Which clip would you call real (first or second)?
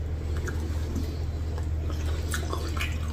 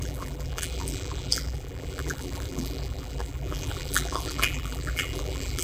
first